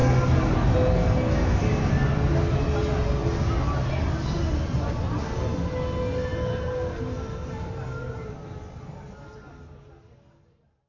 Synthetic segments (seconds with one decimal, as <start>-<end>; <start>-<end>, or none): none